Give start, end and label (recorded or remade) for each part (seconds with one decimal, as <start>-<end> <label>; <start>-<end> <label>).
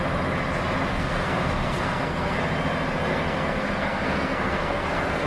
0.0-0.9 recorded; 0.9-2.4 remade; 2.4-3.1 recorded; 3.1-5.3 remade